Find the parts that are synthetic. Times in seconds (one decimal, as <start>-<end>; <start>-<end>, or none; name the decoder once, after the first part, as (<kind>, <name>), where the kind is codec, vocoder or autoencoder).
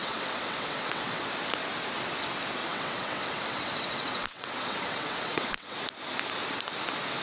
0.0-1.3 (vocoder, WaveNeXt); 2.6-5.8